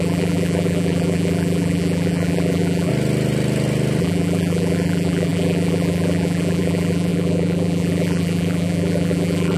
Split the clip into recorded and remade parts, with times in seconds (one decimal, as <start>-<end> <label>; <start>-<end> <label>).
0.0-2.9 remade; 2.9-4.0 recorded; 4.0-9.6 remade